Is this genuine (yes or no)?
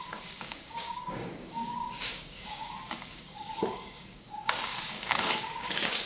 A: no